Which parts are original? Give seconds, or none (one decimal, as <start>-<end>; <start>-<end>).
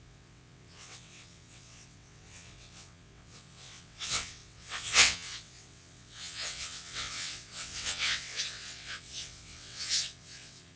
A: none